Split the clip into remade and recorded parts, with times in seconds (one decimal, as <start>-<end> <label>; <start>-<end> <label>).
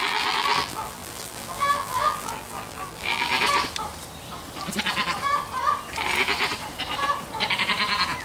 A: 0.0-3.3 remade; 3.3-8.2 recorded